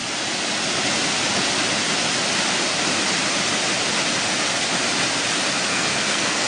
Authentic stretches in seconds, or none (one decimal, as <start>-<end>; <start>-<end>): 0.0-5.7